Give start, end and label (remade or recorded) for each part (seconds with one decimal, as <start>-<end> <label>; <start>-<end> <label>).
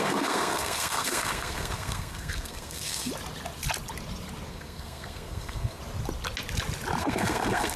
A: 0.0-3.1 remade; 3.1-4.5 recorded; 4.5-5.8 remade; 5.8-7.0 recorded; 7.0-7.8 remade